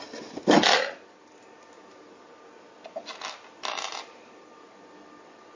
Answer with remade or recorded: recorded